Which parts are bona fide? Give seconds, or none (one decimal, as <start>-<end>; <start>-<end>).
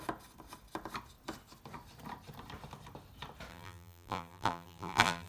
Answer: 0.0-3.5